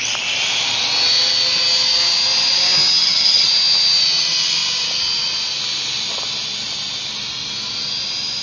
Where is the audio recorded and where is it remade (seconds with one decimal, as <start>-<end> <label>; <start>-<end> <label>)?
0.0-3.0 recorded; 3.0-3.5 remade; 3.5-8.4 recorded